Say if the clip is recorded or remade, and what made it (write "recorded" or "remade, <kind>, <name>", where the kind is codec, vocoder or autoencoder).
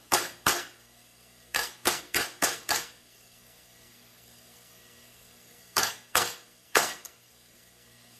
remade, codec, SNAC